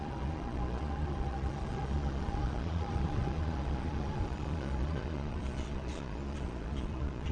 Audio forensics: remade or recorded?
remade